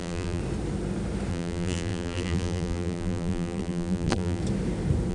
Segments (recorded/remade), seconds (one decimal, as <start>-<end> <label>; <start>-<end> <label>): 0.0-0.4 remade; 0.4-1.3 recorded; 1.3-4.4 remade; 4.4-5.1 recorded

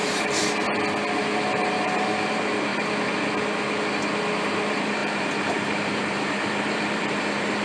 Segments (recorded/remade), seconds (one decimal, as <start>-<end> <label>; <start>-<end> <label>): 0.0-0.4 remade; 0.4-1.2 recorded; 1.2-2.7 remade; 2.7-4.5 recorded; 4.5-7.6 remade

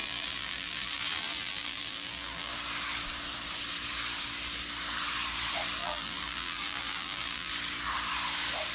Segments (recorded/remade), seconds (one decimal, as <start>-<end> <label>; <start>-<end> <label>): 0.0-2.5 remade; 2.5-5.8 recorded; 5.8-7.5 remade; 7.5-8.7 recorded